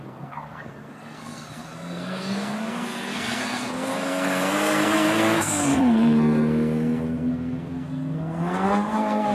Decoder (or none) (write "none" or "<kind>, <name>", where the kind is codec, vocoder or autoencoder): codec, SNAC